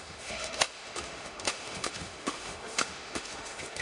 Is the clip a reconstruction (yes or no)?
yes